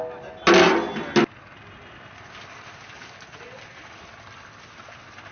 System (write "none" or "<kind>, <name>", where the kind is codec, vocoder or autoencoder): none